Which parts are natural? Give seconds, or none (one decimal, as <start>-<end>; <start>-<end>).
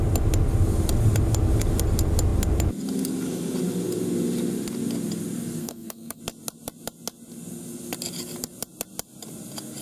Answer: 0.0-5.6; 6.2-9.8